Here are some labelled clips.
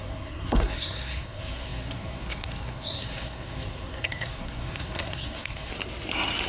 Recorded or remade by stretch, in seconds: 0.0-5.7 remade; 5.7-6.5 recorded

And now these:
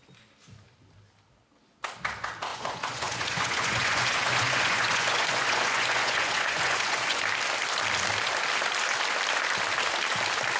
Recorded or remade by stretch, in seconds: 0.0-2.5 recorded; 2.5-7.2 remade; 7.2-10.6 recorded